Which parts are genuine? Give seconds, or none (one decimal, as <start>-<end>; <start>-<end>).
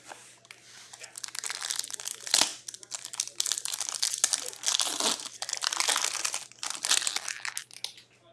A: 0.0-8.3